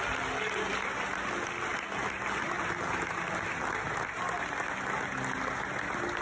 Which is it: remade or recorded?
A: recorded